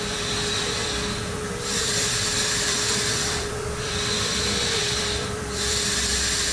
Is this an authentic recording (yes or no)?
no